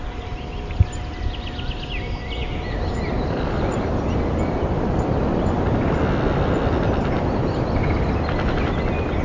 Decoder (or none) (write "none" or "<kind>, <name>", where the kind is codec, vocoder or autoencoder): none